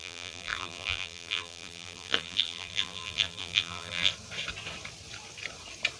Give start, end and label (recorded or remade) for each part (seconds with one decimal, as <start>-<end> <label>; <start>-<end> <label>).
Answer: 0.0-4.1 remade; 4.1-6.0 recorded